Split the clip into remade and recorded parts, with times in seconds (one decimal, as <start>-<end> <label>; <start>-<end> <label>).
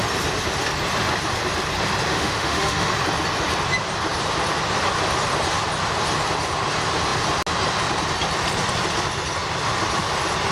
0.0-2.1 recorded; 2.1-2.9 remade; 2.9-10.5 recorded